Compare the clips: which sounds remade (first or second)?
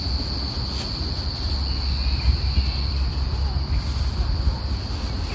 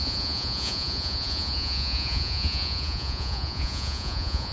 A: second